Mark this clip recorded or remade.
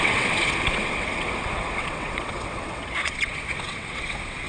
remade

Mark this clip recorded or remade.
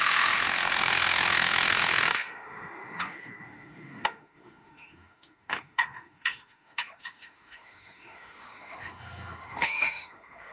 remade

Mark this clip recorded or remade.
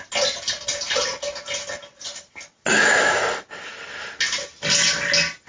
recorded